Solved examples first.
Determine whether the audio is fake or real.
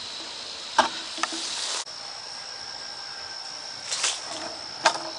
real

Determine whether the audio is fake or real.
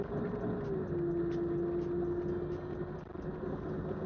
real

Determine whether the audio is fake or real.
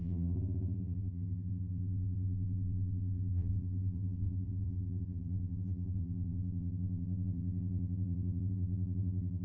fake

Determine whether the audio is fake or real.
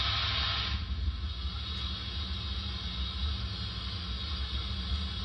real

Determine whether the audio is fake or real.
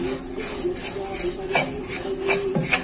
real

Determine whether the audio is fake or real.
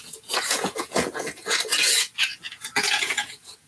fake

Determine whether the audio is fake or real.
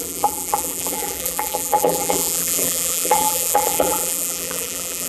fake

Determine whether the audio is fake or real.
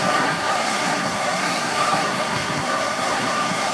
fake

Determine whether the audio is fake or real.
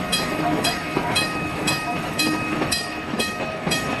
fake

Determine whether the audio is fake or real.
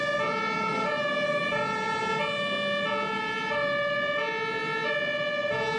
real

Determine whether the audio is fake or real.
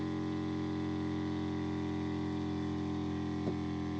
real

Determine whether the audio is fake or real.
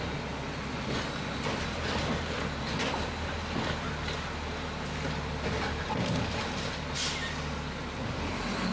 real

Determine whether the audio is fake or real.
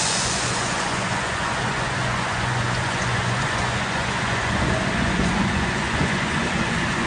fake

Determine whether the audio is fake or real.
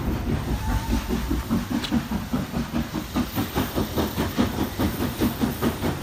fake